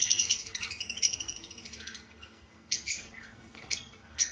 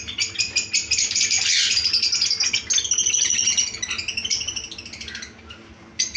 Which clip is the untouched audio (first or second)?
second